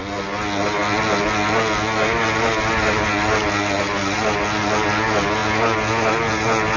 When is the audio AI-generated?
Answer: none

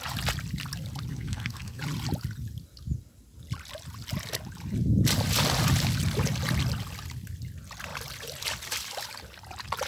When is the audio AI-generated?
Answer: 1.1-1.8 (codec, SNAC)

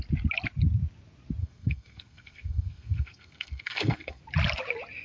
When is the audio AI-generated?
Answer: 1.4-4.2 (codec, SNAC)

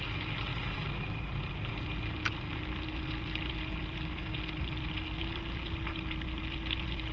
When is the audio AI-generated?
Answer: none